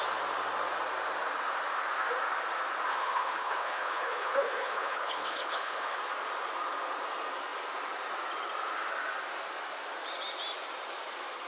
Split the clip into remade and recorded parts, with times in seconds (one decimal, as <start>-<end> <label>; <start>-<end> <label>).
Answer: 0.0-2.9 recorded; 2.9-6.0 remade; 6.0-11.5 recorded